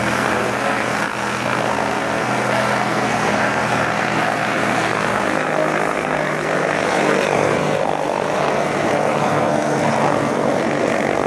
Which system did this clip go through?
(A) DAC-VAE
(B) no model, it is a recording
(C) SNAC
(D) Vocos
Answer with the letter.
C